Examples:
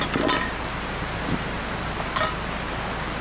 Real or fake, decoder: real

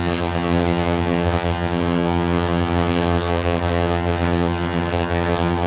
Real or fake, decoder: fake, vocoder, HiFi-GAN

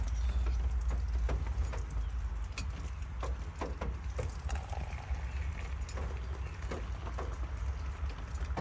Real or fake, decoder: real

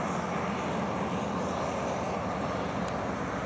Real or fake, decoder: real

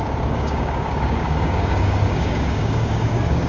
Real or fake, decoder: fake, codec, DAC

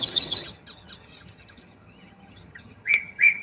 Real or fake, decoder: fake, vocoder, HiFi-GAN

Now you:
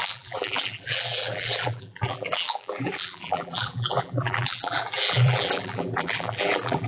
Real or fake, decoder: fake, vocoder, BigVGAN v2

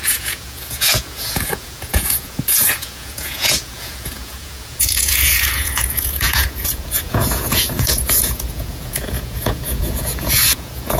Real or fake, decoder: fake, vocoder, Vocos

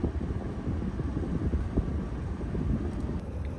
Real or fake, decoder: fake, vocoder, BigVGAN v2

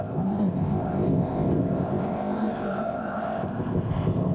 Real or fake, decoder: fake, codec, ZipCodec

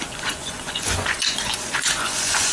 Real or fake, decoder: fake, vocoder, Vocos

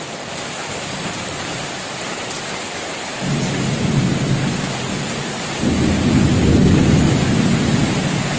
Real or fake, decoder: real